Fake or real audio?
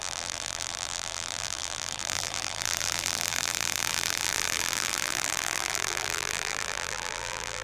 fake